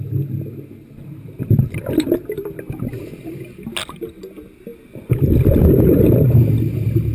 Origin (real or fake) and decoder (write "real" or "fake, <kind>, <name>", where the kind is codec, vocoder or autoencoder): real